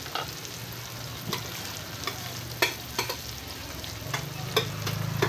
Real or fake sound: real